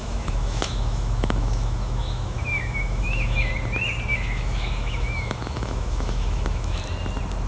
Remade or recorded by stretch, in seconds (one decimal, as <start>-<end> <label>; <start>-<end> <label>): 0.0-3.5 remade; 3.5-4.1 recorded; 4.1-6.8 remade; 6.8-7.5 recorded